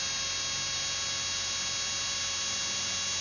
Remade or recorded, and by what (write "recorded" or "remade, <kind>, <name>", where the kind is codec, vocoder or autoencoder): recorded